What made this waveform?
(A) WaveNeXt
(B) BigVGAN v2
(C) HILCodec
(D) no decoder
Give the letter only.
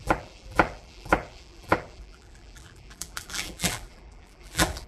B